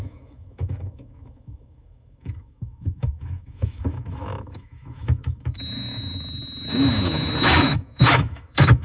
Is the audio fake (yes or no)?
yes